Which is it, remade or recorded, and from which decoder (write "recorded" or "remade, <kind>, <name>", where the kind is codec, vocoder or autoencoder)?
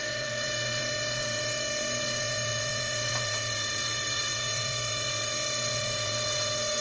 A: remade, vocoder, WaveNeXt